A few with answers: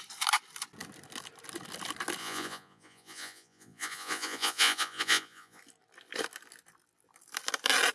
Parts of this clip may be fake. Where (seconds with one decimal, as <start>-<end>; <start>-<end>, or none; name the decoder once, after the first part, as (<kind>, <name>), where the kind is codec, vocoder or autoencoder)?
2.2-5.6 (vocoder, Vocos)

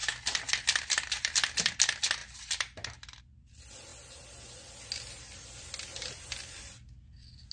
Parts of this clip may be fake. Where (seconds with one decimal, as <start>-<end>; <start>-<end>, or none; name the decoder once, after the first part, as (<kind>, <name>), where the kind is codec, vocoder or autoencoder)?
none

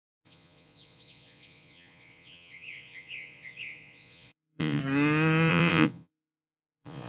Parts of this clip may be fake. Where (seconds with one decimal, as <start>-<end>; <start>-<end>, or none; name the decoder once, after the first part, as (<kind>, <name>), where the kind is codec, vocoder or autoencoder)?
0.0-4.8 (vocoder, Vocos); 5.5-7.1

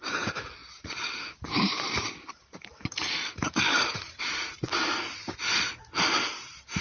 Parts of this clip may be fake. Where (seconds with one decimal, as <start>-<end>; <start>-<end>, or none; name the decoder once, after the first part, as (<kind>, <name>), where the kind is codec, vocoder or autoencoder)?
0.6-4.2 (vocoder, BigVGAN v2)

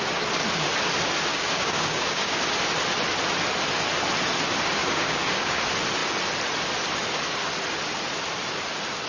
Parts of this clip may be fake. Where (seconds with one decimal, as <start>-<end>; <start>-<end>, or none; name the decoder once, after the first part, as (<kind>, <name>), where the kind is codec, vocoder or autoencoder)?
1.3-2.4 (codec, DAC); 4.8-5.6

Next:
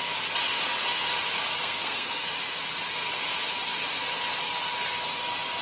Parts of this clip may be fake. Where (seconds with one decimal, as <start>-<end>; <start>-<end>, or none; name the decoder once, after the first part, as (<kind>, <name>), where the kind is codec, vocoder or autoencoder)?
1.6-2.3 (codec, SNAC)